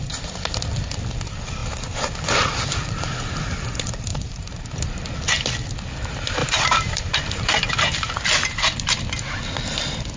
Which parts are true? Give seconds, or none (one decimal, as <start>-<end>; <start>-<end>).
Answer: 0.0-4.1; 5.0-6.4; 7.7-10.2